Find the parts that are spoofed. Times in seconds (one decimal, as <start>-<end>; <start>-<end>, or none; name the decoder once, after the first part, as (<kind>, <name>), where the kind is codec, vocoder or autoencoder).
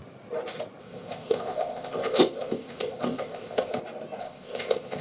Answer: 0.8-3.8 (codec, ZipCodec); 4.2-5.0